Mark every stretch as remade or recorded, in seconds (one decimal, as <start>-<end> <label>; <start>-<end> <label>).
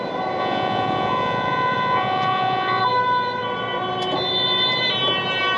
0.0-0.4 recorded; 0.4-2.8 remade; 2.8-5.6 recorded